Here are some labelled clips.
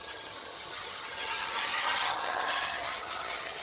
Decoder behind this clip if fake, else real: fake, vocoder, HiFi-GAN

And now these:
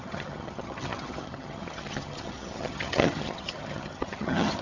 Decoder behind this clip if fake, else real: fake, vocoder, HiFi-GAN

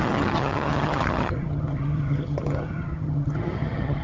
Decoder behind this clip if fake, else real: fake, vocoder, HiFi-GAN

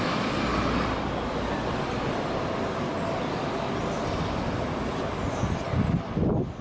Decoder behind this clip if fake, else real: real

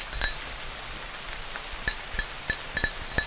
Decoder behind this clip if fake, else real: real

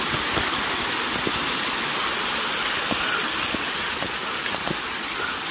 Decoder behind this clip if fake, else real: real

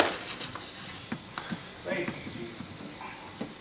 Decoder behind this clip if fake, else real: real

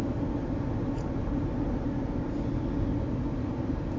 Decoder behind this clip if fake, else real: real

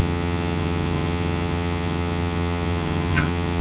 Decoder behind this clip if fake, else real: fake, vocoder, HiFi-GAN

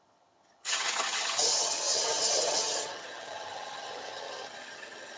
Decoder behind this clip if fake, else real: fake, vocoder, HiFi-GAN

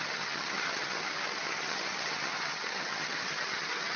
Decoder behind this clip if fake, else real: fake, vocoder, HiFi-GAN